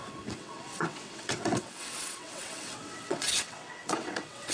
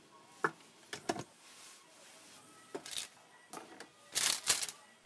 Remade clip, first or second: first